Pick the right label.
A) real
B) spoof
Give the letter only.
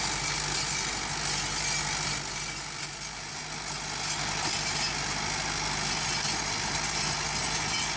A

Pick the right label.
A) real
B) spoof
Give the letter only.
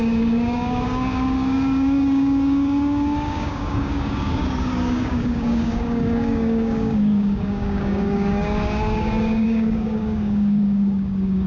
B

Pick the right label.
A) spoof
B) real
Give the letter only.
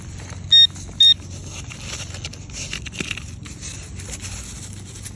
B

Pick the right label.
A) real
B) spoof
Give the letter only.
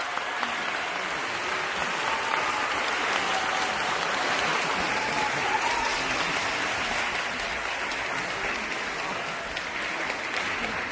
A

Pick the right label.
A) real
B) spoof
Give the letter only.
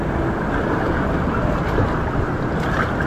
A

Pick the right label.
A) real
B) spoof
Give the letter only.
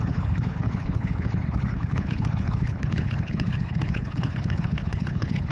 B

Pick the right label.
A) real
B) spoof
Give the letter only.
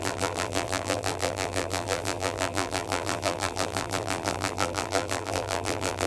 B